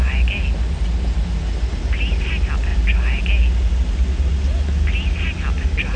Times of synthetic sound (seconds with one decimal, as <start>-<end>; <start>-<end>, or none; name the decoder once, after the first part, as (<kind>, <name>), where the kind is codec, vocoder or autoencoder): none